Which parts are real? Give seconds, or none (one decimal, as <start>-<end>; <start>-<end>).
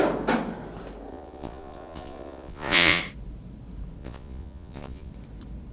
0.0-1.1; 3.0-4.0; 5.1-5.7